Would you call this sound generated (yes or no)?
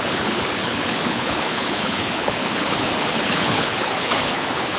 yes